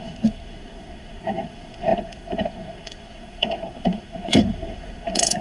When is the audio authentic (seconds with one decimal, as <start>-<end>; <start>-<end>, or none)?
none